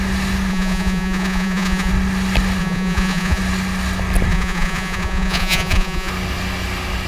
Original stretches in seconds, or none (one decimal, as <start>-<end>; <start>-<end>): 0.0-0.5; 1.9-2.6; 3.4-4.3; 6.1-7.1